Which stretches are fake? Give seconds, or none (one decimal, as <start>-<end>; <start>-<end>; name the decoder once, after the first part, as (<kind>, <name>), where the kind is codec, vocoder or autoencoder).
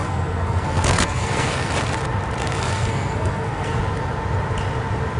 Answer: 0.0-1.7 (codec, SNAC); 2.4-3.8